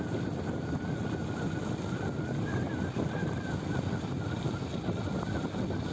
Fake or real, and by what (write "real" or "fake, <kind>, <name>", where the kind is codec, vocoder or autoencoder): real